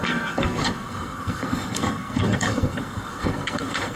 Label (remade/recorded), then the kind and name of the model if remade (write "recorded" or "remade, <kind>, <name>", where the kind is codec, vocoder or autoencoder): remade, codec, SNAC